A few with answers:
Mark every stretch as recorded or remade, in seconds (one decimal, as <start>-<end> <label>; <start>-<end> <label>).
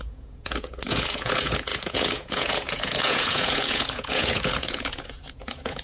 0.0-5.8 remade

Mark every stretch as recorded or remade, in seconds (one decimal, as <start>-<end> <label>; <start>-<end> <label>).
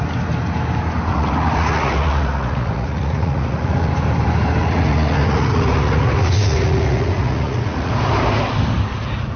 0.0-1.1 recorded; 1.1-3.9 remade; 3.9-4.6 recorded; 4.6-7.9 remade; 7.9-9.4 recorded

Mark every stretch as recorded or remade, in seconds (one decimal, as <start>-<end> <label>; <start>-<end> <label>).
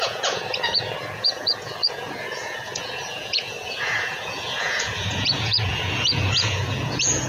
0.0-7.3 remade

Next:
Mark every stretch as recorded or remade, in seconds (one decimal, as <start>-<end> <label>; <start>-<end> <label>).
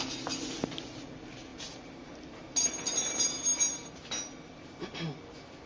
0.0-5.7 recorded